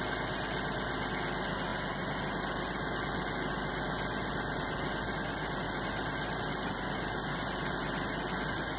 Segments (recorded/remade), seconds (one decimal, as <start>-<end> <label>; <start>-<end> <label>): 0.0-8.8 recorded